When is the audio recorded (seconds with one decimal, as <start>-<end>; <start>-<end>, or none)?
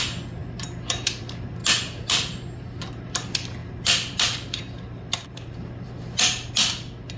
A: 0.0-1.6; 3.1-3.6; 6.5-7.2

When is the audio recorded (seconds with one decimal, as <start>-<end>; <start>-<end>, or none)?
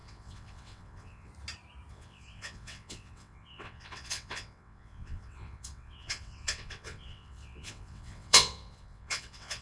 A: 1.3-1.9